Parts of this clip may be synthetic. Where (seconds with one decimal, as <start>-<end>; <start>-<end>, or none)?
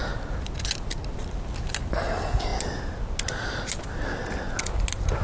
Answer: none